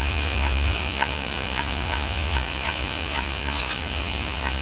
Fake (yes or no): yes